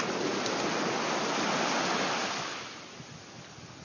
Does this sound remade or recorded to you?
recorded